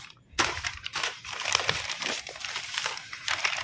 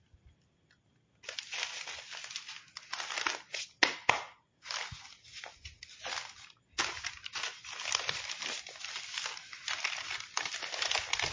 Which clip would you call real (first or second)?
second